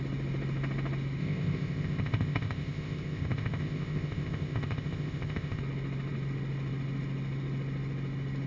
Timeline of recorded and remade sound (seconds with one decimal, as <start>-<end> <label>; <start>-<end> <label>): 0.0-1.2 recorded; 1.2-5.6 remade; 5.6-8.5 recorded